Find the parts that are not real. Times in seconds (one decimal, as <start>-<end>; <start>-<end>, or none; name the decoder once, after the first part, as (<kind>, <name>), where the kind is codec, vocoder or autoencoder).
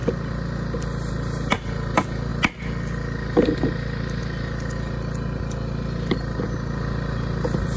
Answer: none